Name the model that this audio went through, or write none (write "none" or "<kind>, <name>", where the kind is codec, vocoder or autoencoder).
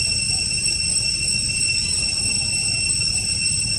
none